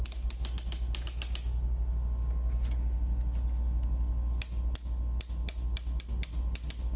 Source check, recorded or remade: recorded